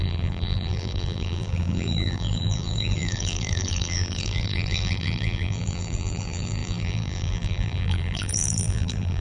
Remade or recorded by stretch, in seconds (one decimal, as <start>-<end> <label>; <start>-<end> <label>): 0.0-9.2 remade